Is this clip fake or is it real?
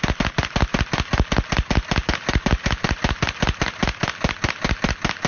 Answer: real